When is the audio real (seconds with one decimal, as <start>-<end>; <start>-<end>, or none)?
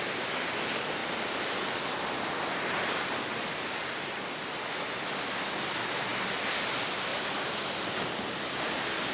0.0-6.1; 6.6-7.1; 8.4-9.1